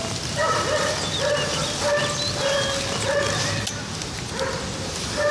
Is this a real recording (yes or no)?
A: yes